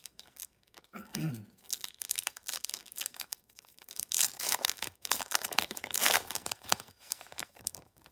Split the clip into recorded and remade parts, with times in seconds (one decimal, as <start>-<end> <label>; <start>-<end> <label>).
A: 0.0-8.1 remade